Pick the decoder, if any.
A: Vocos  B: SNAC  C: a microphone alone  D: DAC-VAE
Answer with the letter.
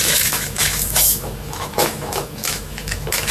D